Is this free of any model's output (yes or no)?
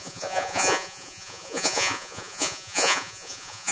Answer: no